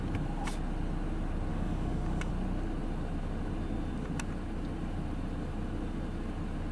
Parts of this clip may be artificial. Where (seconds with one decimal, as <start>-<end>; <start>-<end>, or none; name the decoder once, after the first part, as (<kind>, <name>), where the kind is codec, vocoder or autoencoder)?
1.5-2.3 (codec, DAC)